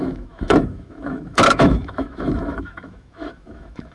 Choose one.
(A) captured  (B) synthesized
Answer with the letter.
B